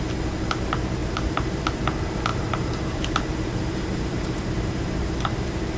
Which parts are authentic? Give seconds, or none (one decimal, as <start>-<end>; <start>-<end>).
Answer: 0.0-1.0; 1.6-2.3